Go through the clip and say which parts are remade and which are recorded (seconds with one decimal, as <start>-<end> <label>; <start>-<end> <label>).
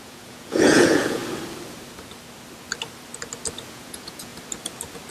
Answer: 0.0-1.2 remade; 1.2-3.7 recorded; 3.7-4.3 remade; 4.3-5.1 recorded